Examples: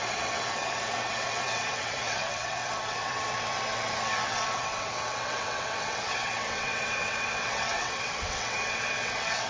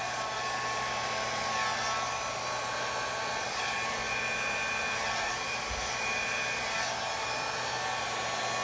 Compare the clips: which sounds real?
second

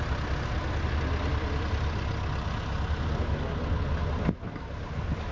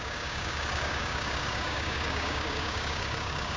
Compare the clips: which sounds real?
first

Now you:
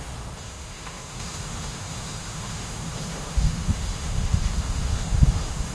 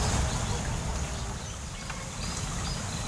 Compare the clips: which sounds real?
second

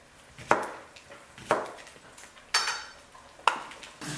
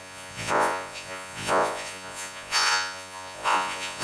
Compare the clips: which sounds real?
first